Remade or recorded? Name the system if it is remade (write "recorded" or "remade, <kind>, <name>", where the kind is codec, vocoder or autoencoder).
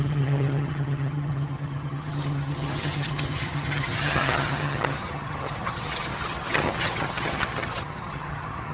remade, vocoder, HiFi-GAN